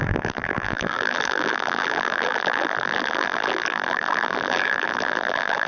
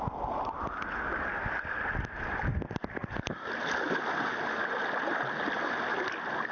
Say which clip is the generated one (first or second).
first